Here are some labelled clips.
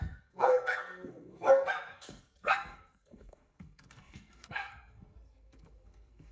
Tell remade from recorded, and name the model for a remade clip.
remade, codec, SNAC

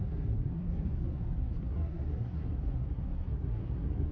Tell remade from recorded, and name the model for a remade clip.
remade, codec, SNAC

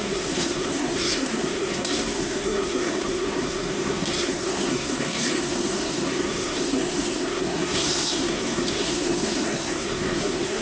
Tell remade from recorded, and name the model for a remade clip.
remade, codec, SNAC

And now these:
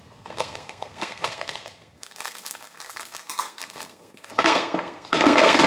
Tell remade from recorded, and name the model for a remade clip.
remade, codec, SNAC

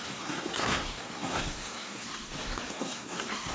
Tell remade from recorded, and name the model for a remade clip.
remade, codec, SNAC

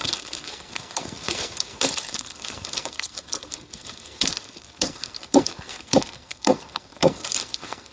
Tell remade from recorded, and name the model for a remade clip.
remade, codec, SNAC